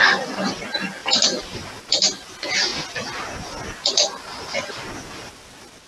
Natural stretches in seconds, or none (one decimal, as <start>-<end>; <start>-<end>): 0.0-5.9